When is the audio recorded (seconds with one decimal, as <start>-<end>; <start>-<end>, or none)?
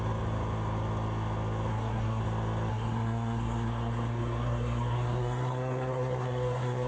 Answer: 0.0-1.7; 2.2-2.7